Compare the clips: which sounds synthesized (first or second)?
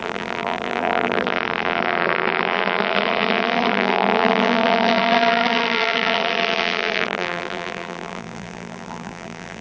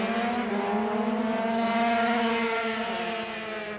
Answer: first